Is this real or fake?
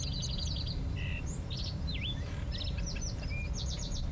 fake